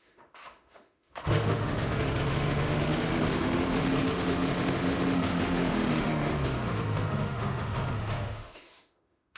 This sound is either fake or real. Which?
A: fake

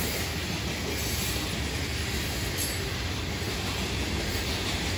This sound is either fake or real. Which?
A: real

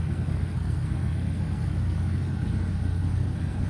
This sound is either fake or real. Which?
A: fake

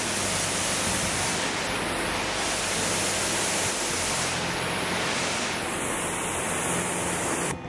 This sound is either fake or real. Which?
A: real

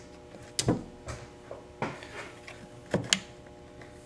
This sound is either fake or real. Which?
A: real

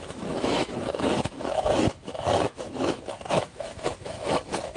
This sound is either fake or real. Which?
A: fake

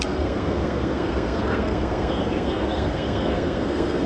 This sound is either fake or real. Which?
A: fake